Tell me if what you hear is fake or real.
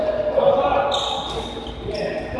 real